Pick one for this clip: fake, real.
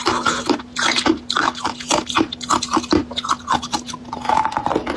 real